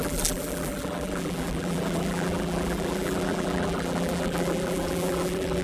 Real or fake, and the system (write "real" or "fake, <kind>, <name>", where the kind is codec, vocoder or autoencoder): fake, vocoder, BigVGAN v2